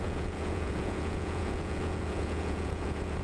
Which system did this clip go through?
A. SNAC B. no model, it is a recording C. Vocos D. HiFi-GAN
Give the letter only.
C